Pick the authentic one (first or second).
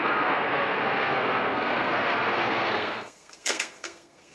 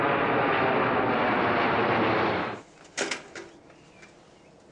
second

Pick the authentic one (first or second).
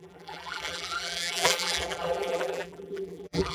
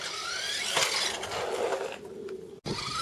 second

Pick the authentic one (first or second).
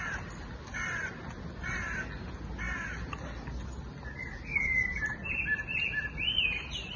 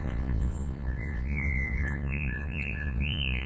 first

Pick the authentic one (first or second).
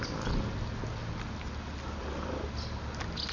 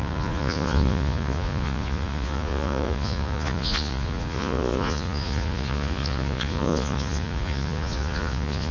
first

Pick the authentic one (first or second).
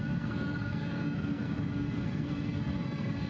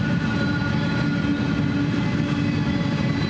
second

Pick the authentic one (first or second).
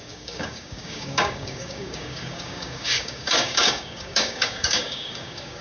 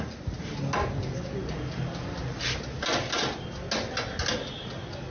second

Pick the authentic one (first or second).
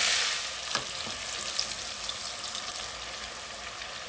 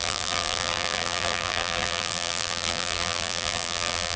first